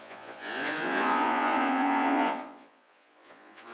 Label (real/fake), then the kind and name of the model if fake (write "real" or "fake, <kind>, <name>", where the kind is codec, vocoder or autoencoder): fake, vocoder, Vocos